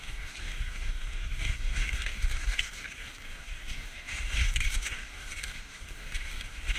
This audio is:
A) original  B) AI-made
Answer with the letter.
B